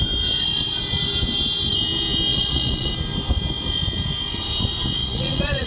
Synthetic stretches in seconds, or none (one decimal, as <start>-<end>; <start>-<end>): 2.3-2.9; 5.0-5.7